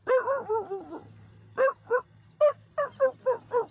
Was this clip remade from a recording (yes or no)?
no